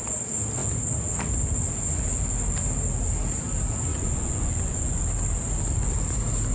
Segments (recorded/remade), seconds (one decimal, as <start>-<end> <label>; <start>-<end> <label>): 0.0-3.9 recorded; 3.9-5.0 remade; 5.0-6.5 recorded